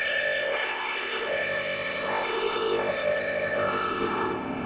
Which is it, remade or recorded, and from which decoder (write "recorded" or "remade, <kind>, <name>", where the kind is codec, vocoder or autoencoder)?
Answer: remade, codec, ZipCodec